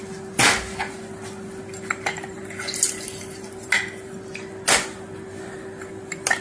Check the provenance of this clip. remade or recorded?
recorded